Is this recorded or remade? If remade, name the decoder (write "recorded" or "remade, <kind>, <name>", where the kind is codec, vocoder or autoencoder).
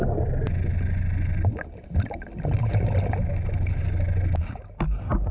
recorded